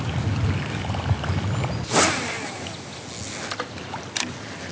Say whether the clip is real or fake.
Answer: real